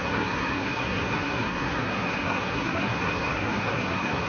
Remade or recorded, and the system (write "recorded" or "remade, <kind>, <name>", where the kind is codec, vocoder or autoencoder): remade, codec, SNAC